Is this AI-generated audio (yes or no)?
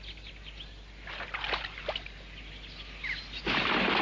no